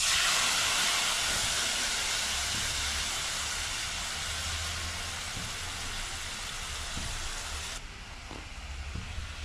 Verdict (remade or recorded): recorded